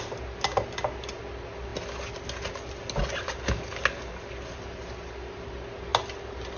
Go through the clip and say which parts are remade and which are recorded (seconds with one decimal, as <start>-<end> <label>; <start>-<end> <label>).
0.0-6.6 recorded